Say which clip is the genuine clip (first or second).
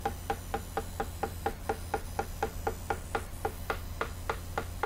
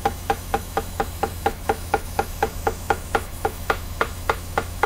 first